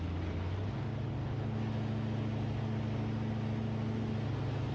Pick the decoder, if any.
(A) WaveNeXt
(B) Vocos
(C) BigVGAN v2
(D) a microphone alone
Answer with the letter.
D